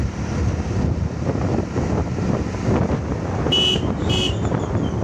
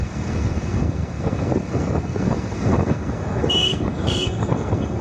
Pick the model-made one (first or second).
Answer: second